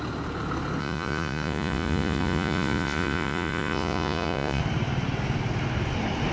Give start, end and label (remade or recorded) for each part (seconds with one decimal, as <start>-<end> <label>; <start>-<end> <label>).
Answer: 0.0-0.8 recorded; 0.8-4.6 remade; 4.6-6.3 recorded